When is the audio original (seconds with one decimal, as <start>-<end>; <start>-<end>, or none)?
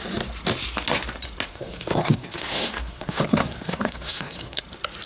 0.0-1.5; 4.6-5.1